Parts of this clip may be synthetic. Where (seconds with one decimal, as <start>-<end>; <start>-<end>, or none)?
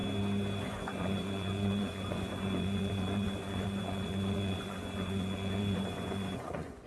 0.6-6.9